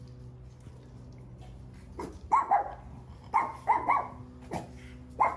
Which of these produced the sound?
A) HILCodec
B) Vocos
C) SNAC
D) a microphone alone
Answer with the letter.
D